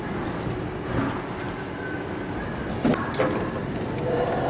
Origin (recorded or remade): recorded